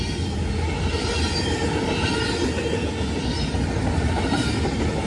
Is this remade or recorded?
recorded